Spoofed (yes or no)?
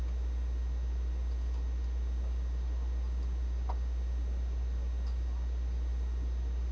no